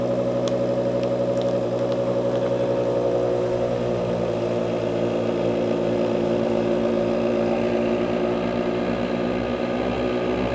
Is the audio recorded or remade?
recorded